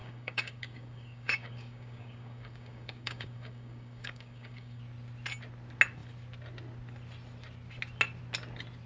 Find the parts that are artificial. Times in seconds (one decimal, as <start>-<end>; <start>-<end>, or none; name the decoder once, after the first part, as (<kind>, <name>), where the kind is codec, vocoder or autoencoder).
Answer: 0.0-4.8 (codec, DAC)